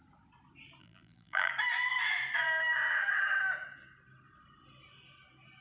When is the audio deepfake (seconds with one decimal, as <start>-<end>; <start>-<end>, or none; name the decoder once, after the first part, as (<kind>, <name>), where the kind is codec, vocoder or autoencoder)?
0.8-1.5 (vocoder, BigVGAN v2)